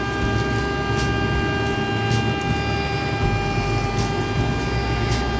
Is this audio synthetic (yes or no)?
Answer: no